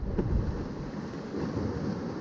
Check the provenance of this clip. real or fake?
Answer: real